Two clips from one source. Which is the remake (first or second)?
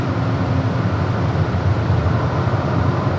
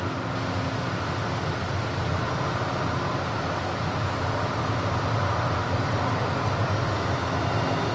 first